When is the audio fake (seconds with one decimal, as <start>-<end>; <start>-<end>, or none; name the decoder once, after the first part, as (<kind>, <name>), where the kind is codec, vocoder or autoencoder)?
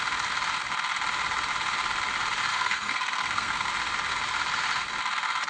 2.5-3.7 (codec, SNAC)